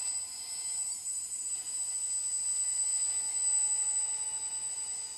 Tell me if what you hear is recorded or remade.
remade